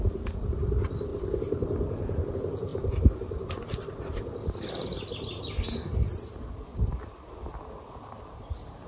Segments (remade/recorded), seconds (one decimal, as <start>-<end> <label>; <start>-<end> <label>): 0.0-8.9 recorded